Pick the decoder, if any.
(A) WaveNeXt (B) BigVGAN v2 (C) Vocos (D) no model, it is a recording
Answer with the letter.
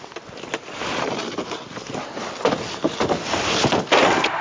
D